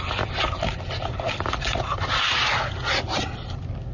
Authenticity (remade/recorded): recorded